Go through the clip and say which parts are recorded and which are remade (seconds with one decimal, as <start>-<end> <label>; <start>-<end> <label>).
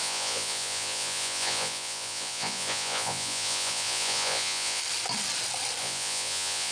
0.0-4.8 remade; 4.8-5.8 recorded; 5.8-6.7 remade